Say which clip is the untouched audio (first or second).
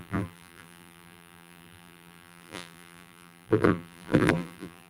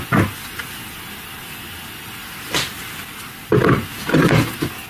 second